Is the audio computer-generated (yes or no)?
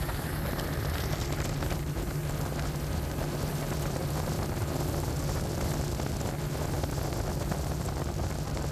no